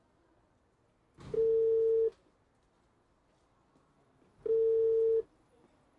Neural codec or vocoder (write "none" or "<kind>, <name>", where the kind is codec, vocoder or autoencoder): none